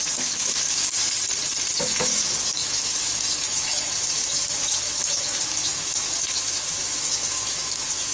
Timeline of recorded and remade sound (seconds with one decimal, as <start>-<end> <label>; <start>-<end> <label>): 0.0-1.0 remade; 1.0-1.8 recorded; 1.8-8.1 remade